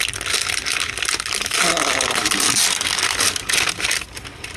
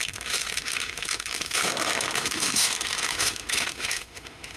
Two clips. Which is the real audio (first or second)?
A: first